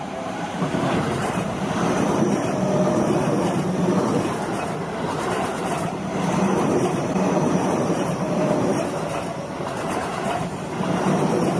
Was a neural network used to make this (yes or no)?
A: yes